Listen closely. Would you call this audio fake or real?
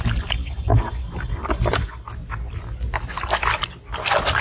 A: real